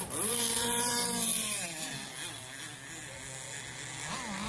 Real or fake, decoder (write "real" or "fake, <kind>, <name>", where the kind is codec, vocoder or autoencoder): real